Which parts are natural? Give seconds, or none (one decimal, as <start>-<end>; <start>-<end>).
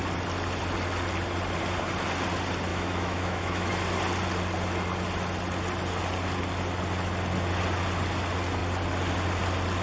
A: 0.0-2.7; 3.7-9.8